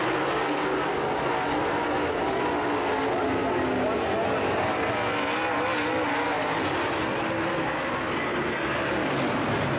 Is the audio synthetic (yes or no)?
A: no